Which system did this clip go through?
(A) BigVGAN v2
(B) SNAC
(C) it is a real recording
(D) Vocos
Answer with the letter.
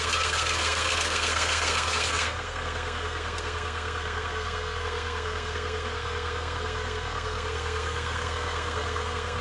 B